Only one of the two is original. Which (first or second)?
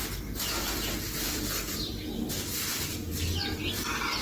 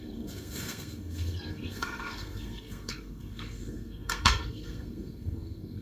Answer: first